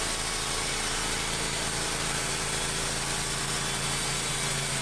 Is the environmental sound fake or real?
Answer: real